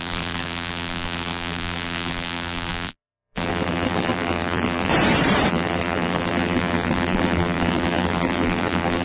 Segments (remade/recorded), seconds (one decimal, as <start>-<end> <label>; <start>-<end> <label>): 0.0-4.9 remade; 4.9-5.5 recorded; 5.5-9.0 remade